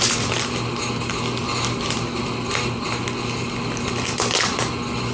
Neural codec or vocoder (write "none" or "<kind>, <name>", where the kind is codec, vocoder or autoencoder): none